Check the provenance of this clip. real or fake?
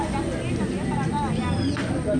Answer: real